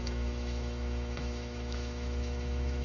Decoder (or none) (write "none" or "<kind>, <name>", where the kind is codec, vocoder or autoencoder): autoencoder, DAC-VAE